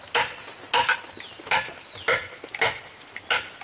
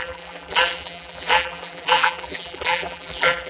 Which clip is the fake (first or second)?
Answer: second